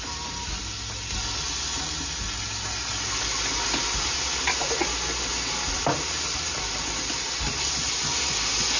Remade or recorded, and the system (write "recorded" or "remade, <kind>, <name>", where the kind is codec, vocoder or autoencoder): recorded